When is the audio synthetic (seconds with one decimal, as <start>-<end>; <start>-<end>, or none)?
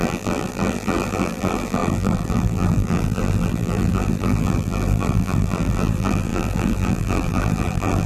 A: 0.0-8.1